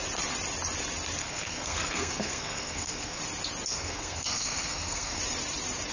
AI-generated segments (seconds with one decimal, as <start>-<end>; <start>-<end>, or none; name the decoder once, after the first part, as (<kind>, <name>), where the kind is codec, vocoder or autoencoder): 1.2-3.2 (codec, SNAC); 3.7-5.2